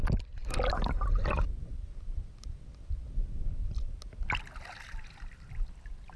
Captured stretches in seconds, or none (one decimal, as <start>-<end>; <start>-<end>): 0.0-6.2